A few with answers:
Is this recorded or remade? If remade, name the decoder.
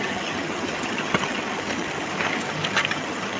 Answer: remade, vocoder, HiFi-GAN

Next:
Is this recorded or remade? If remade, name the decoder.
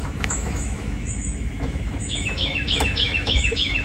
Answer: remade, autoencoder, DAC-VAE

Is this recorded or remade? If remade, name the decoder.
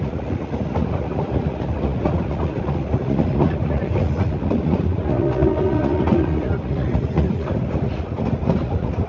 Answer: remade, vocoder, Vocos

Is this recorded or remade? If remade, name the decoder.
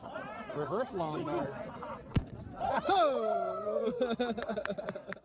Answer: remade, vocoder, WaveNeXt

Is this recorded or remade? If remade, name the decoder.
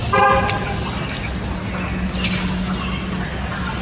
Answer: recorded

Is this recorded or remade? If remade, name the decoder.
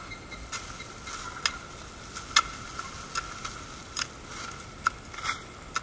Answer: recorded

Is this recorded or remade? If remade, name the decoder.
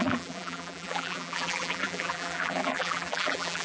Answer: remade, vocoder, BigVGAN v2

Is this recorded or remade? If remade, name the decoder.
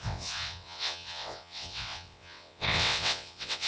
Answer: remade, vocoder, WaveNeXt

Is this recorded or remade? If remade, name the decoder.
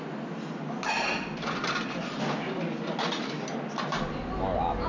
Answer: recorded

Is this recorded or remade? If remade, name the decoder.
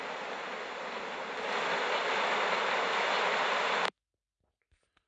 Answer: recorded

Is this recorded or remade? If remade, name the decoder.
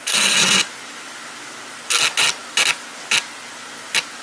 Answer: recorded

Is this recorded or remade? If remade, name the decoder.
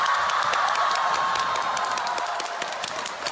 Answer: recorded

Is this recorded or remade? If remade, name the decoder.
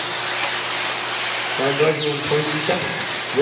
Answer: recorded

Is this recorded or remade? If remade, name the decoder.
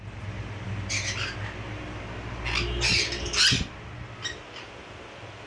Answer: remade, vocoder, BigVGAN v2